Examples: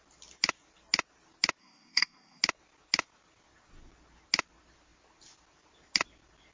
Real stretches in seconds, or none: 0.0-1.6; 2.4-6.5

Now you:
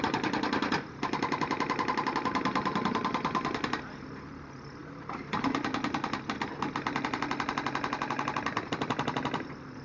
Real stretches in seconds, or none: 0.0-9.8

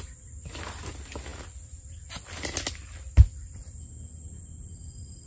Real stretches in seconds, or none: 0.0-5.3